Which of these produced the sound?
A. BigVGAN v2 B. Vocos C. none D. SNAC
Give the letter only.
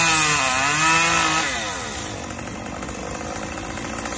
C